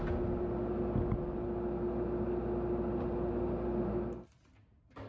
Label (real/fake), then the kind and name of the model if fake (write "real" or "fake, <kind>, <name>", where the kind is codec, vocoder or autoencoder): real